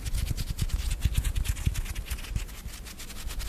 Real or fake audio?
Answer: real